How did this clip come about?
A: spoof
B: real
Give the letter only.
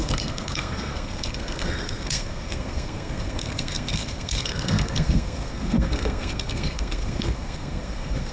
A